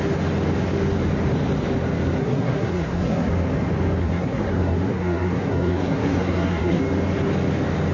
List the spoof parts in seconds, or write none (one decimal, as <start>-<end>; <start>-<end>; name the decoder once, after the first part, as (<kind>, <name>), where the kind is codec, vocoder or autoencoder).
2.2-3.3 (codec, SNAC); 4.0-6.8